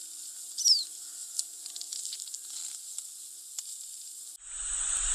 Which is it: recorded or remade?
recorded